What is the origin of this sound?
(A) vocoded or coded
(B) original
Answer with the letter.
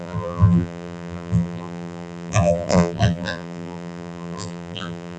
A